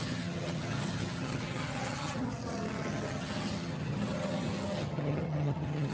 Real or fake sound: fake